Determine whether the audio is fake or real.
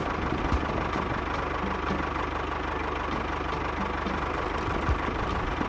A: real